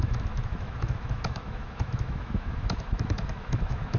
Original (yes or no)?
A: no